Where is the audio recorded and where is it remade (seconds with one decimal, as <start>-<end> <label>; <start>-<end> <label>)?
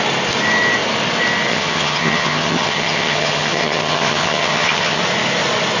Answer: 0.0-1.5 recorded; 1.5-5.0 remade; 5.0-5.8 recorded